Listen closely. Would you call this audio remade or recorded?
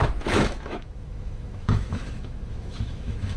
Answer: remade